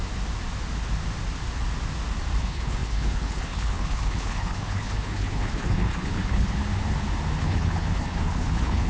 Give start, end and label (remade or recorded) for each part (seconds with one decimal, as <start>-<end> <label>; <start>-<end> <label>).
0.0-2.4 recorded; 2.4-6.6 remade; 6.6-7.4 recorded; 7.4-8.9 remade